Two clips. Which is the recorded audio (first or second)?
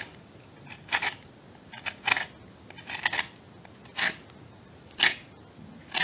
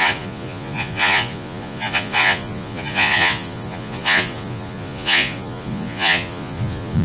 first